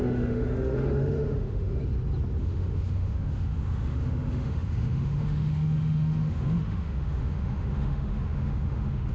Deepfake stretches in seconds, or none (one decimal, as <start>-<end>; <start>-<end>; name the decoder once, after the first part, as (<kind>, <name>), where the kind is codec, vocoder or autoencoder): 0.0-1.8 (autoencoder, DAC-VAE); 2.4-9.1